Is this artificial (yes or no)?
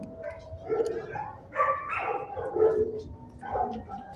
no